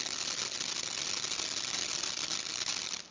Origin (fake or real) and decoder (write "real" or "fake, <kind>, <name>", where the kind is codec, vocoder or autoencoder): real